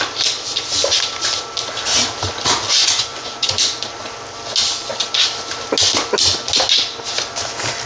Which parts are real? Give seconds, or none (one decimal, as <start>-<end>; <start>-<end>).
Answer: 0.0-2.8; 3.5-7.9